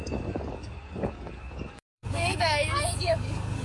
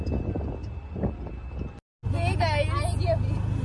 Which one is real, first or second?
second